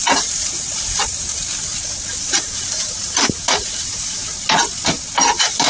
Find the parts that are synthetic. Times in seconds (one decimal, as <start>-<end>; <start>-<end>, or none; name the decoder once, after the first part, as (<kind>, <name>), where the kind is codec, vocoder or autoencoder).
2.2-4.2 (vocoder, BigVGAN v2); 5.2-5.7